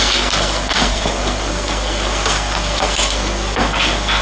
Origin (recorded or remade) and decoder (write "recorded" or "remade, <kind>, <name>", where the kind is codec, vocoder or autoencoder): remade, codec, SNAC